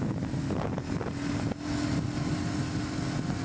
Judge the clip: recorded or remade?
recorded